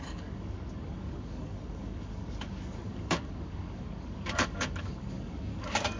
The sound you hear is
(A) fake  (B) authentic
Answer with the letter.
A